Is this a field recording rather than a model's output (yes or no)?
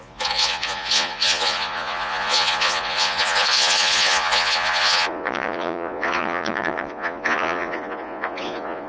no